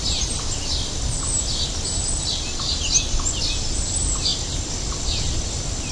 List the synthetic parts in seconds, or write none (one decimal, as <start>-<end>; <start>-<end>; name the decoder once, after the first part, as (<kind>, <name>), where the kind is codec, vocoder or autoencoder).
none